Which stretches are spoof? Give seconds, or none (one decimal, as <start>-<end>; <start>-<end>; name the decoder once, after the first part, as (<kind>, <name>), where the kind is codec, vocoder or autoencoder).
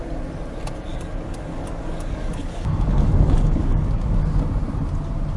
0.9-4.1 (codec, DAC)